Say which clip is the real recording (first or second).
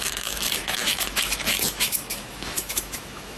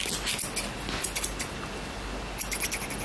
second